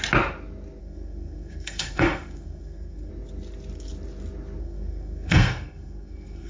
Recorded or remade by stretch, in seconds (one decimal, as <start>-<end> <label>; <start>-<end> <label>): 0.0-0.8 recorded; 0.8-3.1 remade; 3.1-4.6 recorded; 4.6-6.5 remade